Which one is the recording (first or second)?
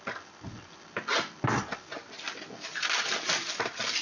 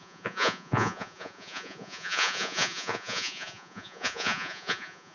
first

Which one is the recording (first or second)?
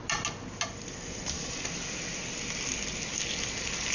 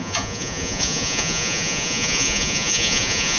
first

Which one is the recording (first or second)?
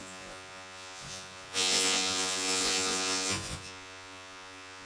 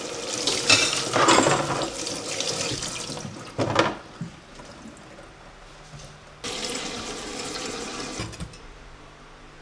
second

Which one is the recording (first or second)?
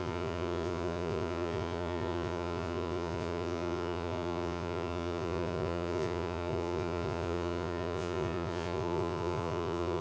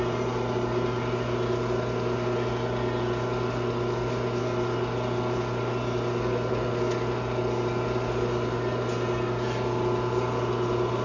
second